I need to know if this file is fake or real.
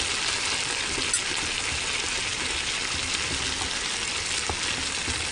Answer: real